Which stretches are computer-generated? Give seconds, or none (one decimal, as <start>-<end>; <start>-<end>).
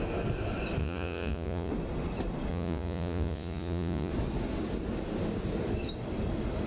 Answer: 0.8-1.7; 2.5-4.1